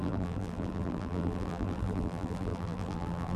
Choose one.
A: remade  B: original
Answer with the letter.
A